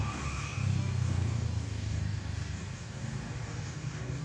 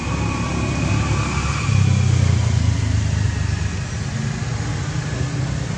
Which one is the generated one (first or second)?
first